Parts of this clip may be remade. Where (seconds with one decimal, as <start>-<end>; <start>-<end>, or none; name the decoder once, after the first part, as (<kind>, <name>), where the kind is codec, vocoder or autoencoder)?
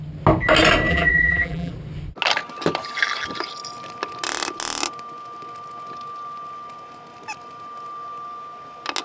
0.9-1.7 (vocoder, BigVGAN v2)